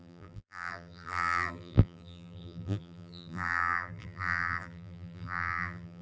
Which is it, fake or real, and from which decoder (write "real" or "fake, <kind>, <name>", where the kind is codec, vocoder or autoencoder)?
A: fake, vocoder, BigVGAN v2